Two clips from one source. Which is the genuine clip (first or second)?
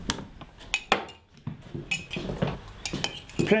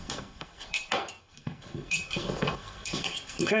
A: first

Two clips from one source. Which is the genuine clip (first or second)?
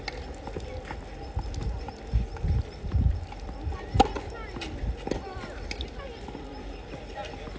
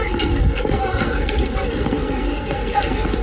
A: first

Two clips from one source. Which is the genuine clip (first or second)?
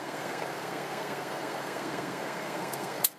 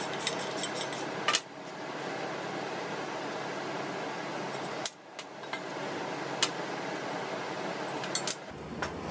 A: second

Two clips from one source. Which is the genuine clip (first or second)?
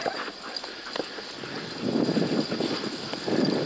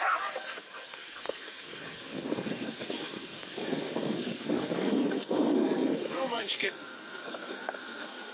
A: first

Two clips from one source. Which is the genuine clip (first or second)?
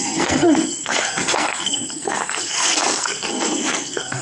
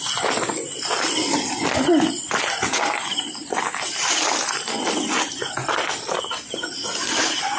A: second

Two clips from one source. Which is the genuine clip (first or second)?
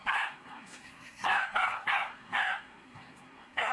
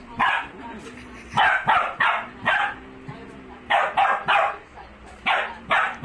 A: second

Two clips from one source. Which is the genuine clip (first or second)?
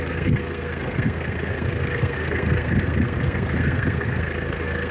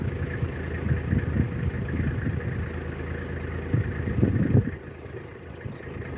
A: second